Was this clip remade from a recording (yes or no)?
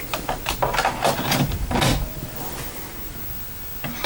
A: no